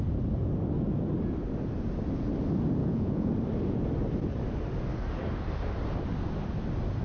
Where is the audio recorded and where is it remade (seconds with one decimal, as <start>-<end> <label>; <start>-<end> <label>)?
0.0-2.8 recorded; 2.8-3.3 remade; 3.3-7.0 recorded